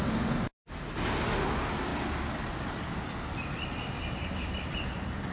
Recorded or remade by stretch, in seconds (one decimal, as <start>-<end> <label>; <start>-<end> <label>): 0.0-5.3 recorded